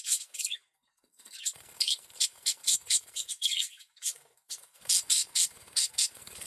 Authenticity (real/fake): fake